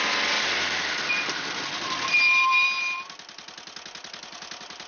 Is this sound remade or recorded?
recorded